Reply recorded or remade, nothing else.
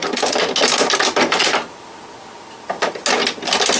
recorded